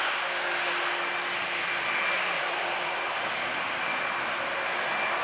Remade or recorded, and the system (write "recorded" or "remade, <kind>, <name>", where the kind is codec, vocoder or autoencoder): recorded